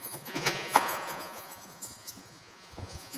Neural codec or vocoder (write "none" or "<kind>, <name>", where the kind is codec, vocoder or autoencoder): vocoder, Vocos